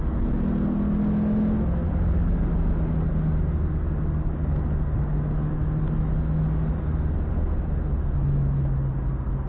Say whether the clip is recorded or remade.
recorded